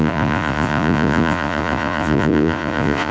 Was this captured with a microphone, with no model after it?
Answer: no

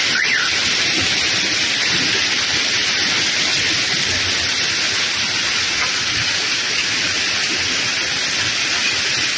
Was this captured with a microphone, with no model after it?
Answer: yes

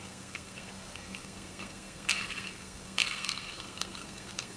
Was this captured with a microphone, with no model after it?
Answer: no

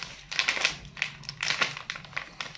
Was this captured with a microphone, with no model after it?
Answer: yes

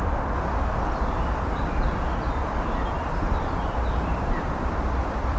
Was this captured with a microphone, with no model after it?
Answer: no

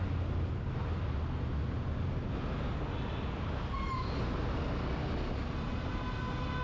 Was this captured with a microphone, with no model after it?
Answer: yes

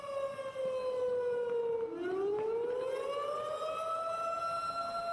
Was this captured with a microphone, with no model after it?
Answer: yes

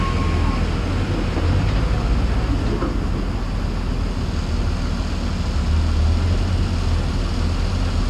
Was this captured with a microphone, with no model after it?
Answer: yes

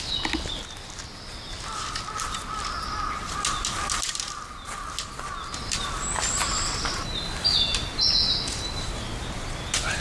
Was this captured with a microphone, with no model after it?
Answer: yes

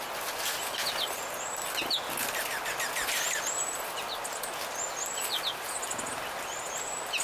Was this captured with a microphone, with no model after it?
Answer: yes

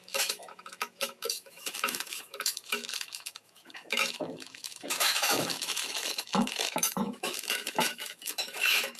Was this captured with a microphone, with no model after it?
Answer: no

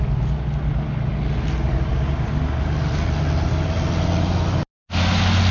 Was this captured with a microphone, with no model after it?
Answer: yes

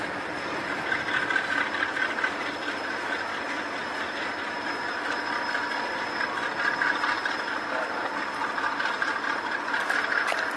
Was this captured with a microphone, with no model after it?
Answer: yes